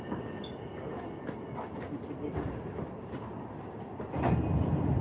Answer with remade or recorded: recorded